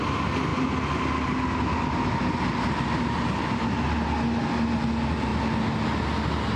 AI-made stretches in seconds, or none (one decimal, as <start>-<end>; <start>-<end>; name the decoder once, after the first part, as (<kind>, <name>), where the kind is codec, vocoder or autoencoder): none